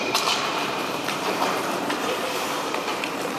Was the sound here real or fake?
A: fake